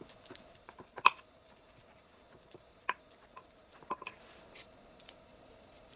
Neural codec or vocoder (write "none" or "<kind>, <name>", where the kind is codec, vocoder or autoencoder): vocoder, BigVGAN v2